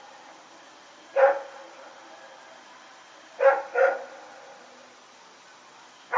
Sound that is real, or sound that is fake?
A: real